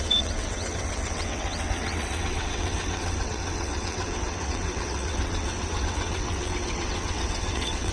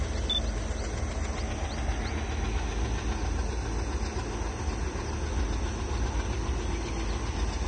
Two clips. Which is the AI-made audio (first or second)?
first